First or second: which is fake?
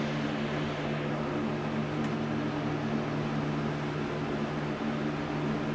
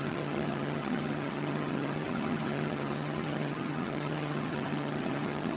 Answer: second